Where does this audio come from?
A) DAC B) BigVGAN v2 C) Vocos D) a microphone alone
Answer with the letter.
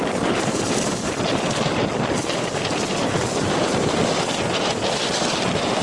B